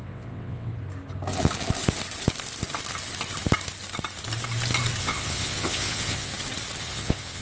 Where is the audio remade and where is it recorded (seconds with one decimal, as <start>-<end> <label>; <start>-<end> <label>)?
0.0-0.7 remade; 0.7-5.0 recorded; 5.0-6.3 remade; 6.3-6.8 recorded; 6.8-7.4 remade

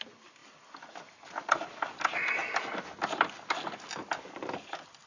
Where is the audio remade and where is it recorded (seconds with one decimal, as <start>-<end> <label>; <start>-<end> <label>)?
0.0-5.1 recorded